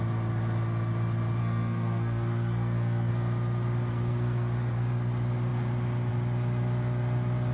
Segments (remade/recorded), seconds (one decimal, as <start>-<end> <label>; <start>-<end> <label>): 0.0-1.4 recorded; 1.4-3.1 remade; 3.1-3.9 recorded; 3.9-4.9 remade; 4.9-7.5 recorded